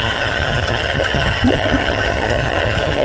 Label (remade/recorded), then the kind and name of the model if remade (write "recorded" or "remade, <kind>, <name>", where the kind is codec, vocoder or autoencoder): remade, vocoder, HiFi-GAN